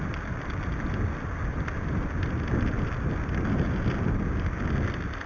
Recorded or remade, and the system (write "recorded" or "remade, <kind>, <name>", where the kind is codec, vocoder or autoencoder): recorded